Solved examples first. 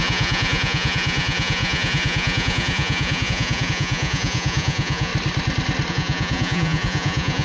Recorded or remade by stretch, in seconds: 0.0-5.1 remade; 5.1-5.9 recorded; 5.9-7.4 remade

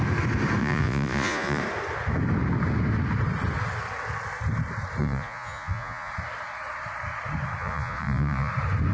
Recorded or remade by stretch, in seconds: 0.0-0.6 recorded; 0.6-1.6 remade; 1.6-5.0 recorded; 5.0-6.1 remade; 6.1-7.6 recorded; 7.6-8.5 remade; 8.5-8.9 recorded

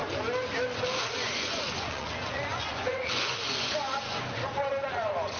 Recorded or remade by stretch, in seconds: 0.0-1.0 recorded; 1.0-4.4 remade; 4.4-4.9 recorded; 4.9-5.4 remade

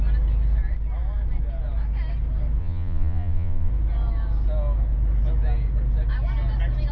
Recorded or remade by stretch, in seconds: 0.0-2.6 recorded; 2.6-3.7 remade; 3.7-6.9 recorded

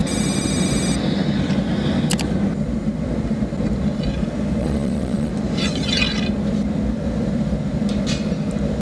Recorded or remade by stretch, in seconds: 0.0-4.6 recorded; 4.6-5.3 remade; 5.3-8.8 recorded

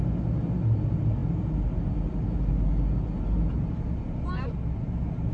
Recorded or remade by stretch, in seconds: 0.0-5.3 recorded

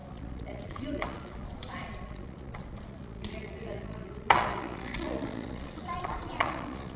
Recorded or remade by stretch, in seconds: 0.0-7.0 remade